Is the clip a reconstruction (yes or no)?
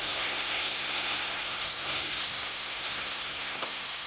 yes